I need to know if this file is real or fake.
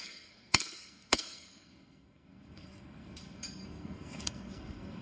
fake